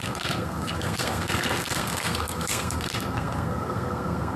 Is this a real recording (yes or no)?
no